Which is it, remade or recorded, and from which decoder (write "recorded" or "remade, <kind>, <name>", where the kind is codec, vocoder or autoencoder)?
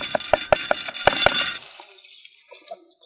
recorded